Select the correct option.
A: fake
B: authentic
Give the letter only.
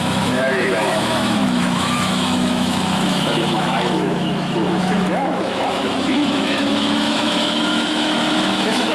A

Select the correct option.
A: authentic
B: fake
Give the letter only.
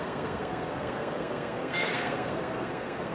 B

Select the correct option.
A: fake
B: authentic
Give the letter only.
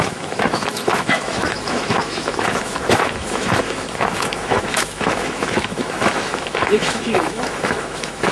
A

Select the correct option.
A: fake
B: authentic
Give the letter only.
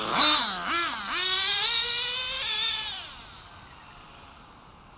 B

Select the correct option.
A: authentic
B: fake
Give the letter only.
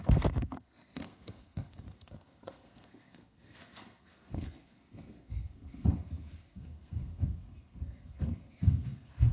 B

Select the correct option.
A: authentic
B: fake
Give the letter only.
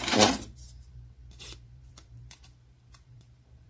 B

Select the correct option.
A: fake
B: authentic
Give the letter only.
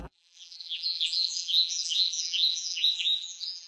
A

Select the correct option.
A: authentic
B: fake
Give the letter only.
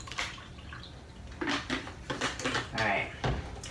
A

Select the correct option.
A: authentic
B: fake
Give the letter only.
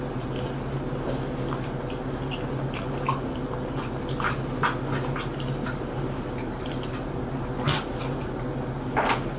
A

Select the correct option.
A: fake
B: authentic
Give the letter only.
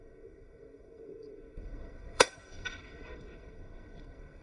A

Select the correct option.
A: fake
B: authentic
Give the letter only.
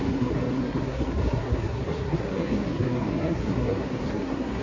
A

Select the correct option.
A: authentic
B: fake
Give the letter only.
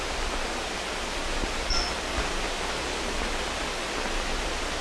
A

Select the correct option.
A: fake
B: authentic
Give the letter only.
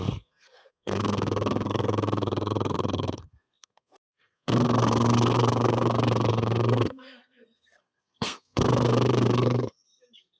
A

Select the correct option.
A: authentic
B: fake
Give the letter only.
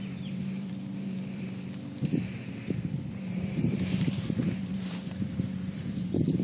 B